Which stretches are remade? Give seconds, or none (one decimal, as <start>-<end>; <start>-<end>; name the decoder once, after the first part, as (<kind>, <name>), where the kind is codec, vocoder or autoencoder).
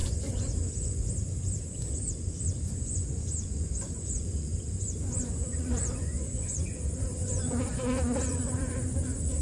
0.0-9.4 (vocoder, Vocos)